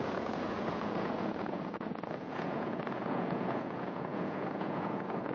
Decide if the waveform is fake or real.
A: fake